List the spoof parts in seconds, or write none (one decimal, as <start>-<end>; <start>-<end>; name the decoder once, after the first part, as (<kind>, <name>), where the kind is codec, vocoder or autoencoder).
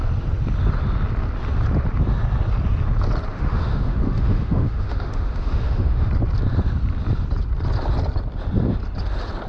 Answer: 3.3-6.1 (autoencoder, DAC-VAE)